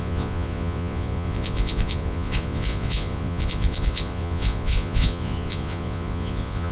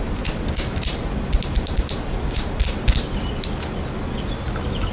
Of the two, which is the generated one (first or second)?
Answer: first